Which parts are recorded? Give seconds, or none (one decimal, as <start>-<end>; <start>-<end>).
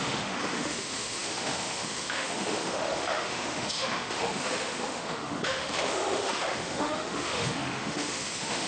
none